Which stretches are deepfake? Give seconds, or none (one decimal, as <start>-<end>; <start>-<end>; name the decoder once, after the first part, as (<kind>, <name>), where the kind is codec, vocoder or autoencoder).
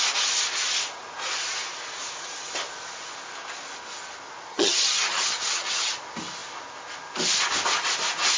4.5-5.9 (vocoder, HiFi-GAN)